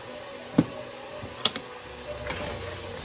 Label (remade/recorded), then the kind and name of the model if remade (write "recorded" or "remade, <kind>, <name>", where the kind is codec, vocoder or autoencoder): recorded